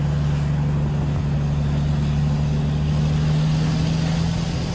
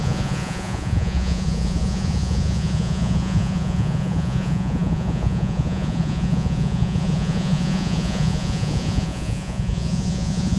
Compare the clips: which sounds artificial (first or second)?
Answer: second